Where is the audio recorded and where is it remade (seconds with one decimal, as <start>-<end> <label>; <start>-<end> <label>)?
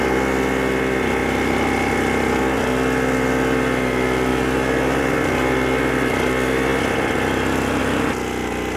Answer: 0.0-4.3 recorded; 4.3-5.0 remade; 5.0-8.8 recorded